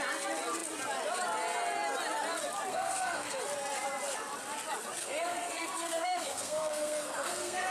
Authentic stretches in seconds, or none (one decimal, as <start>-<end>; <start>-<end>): 0.0-2.7; 3.4-5.0